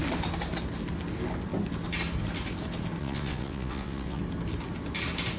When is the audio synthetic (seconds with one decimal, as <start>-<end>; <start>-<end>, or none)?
3.0-4.2